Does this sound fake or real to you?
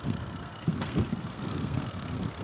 fake